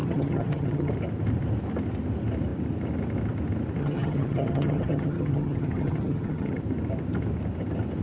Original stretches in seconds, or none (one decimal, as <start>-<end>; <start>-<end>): 0.9-3.8; 6.6-8.0